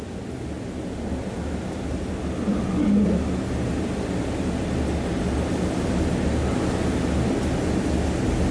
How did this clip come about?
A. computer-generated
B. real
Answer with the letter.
B